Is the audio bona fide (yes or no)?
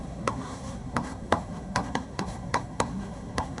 no